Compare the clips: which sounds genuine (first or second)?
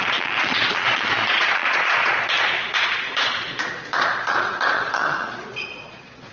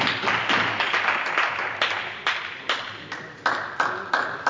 second